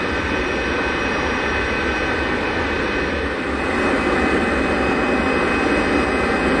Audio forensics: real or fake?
real